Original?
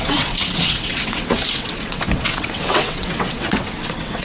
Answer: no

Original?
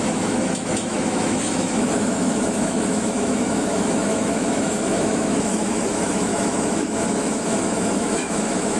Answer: no